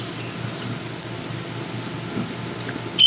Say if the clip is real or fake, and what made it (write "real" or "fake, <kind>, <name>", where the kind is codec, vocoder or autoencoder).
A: real